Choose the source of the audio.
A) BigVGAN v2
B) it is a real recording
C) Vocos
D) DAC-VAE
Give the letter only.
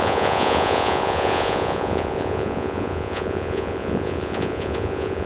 C